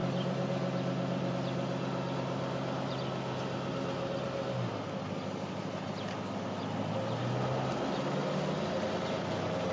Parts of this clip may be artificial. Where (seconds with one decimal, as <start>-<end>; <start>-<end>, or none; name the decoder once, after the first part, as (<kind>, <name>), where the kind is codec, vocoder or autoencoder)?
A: none